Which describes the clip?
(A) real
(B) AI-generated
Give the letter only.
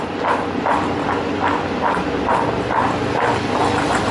A